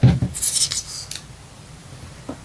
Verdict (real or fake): real